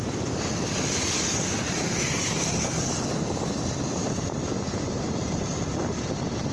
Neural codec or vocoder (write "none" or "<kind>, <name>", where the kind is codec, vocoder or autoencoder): none